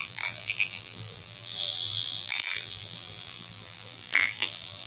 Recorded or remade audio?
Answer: remade